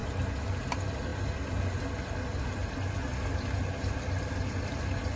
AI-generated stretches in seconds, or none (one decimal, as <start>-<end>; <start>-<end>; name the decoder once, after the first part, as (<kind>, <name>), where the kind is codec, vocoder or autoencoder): 0.0-0.7 (vocoder, BigVGAN v2)